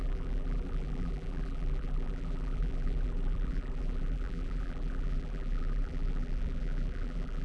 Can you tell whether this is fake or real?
fake